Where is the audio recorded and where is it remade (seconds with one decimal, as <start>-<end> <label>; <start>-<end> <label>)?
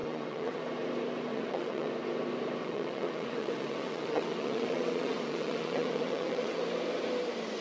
0.0-0.6 remade; 0.6-1.3 recorded; 1.3-1.9 remade; 1.9-2.6 recorded; 2.6-6.6 remade; 6.6-7.6 recorded